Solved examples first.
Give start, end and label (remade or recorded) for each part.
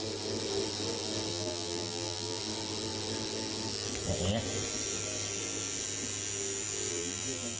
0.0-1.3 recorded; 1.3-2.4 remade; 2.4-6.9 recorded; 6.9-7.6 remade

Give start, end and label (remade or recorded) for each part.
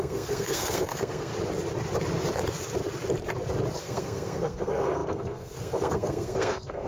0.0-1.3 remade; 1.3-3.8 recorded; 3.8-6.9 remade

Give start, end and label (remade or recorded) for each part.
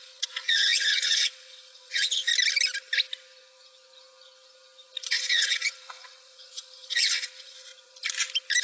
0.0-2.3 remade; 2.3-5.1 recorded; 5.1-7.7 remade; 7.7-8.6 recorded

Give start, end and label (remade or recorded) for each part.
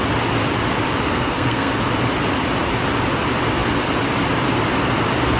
0.0-1.1 recorded; 1.1-1.7 remade; 1.7-5.4 recorded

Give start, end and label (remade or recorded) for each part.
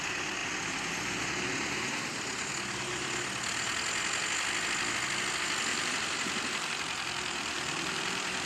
0.0-5.7 recorded; 5.7-8.5 remade